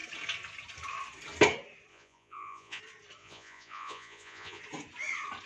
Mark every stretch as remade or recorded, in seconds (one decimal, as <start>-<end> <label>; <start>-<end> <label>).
0.0-1.9 recorded; 1.9-2.8 remade; 2.8-3.2 recorded; 3.2-4.6 remade; 4.6-5.5 recorded